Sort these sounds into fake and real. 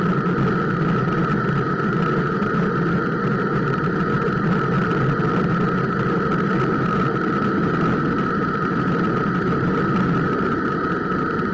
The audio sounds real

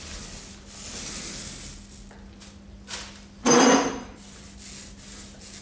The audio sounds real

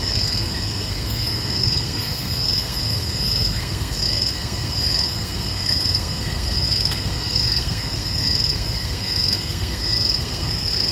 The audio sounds fake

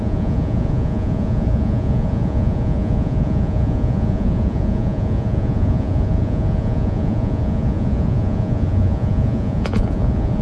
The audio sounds fake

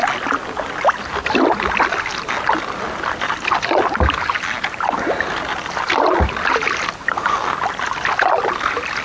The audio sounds real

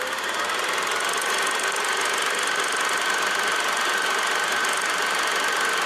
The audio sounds real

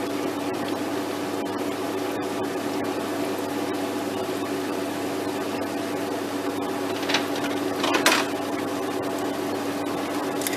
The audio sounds real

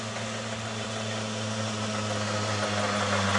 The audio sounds real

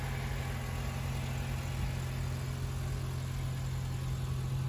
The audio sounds real